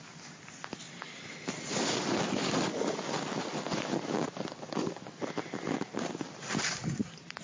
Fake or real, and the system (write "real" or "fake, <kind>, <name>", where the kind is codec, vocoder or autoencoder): real